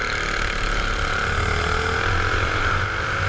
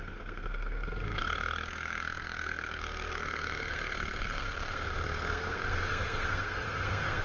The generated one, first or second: second